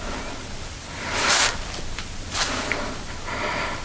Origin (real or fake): real